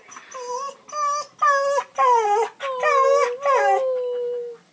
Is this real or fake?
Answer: real